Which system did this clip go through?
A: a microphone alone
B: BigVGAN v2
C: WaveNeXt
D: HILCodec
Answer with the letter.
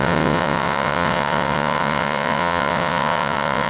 C